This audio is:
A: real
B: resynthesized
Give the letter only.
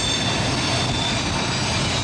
A